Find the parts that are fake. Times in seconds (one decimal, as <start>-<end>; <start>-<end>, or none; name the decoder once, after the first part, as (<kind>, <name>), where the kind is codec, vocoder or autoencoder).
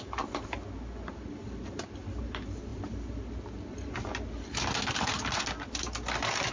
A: none